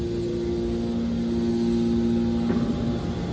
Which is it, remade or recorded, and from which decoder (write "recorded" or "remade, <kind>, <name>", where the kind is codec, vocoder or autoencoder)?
recorded